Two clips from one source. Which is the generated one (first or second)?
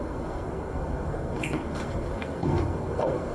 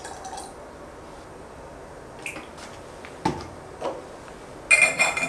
first